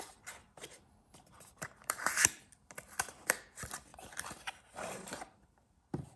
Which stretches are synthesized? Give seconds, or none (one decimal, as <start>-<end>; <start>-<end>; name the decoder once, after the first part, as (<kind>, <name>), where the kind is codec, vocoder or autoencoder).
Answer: 0.4-2.4 (vocoder, BigVGAN v2); 3.9-5.8